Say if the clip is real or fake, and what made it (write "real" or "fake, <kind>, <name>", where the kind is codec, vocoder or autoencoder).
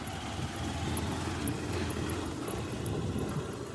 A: real